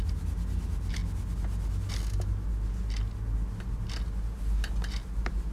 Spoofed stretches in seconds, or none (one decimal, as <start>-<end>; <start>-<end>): none